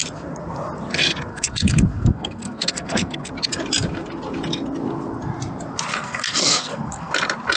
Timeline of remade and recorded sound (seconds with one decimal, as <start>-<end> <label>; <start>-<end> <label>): 0.0-1.3 recorded; 1.3-3.3 remade; 3.3-5.9 recorded; 5.9-7.1 remade; 7.1-7.6 recorded